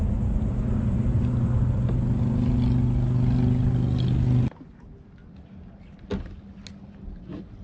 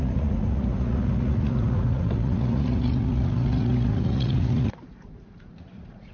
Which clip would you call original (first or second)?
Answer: first